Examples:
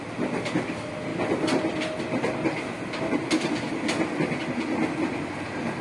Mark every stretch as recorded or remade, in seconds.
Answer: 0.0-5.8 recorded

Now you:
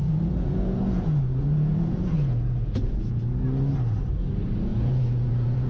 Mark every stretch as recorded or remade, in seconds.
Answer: 0.0-3.4 remade; 3.4-4.7 recorded; 4.7-5.7 remade

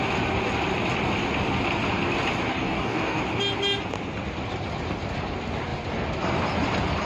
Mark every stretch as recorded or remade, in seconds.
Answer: 0.0-2.5 recorded; 2.5-3.2 remade; 3.2-7.1 recorded

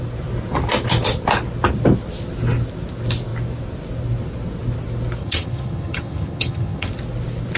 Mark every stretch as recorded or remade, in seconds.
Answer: 0.0-5.2 recorded; 5.2-6.9 remade; 6.9-7.6 recorded